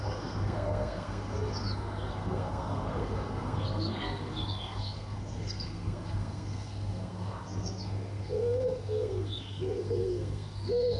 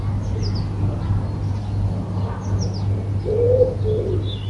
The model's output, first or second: first